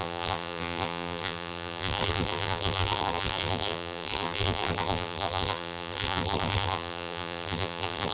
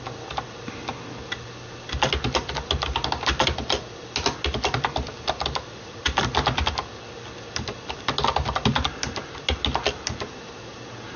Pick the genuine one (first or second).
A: second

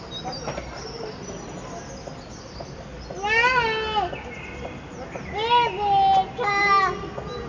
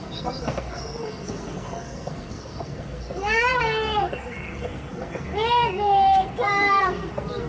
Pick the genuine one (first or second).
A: first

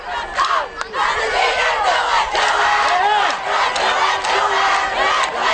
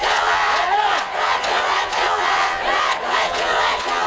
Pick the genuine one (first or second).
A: first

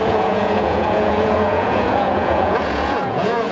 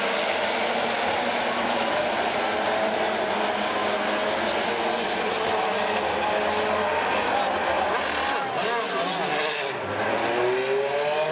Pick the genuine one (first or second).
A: second